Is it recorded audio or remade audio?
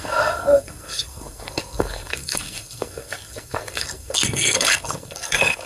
remade